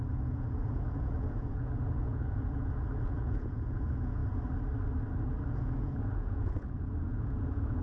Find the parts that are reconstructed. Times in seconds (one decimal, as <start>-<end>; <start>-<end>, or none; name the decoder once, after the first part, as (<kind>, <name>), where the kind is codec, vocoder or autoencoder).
0.0-4.2 (vocoder, Vocos); 5.5-7.8